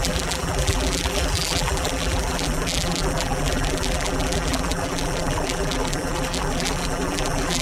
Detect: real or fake fake